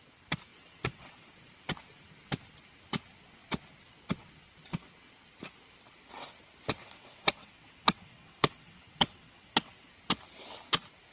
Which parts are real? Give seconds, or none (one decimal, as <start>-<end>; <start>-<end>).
0.0-0.5; 1.3-6.8; 9.9-11.1